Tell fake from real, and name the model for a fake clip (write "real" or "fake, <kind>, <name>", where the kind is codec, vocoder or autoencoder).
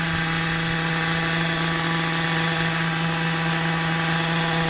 real